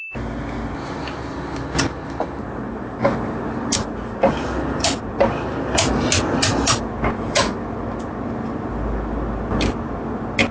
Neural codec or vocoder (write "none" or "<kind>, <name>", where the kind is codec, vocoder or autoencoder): none